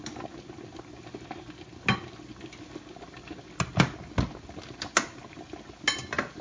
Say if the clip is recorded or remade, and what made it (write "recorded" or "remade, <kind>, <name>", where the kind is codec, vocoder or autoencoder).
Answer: recorded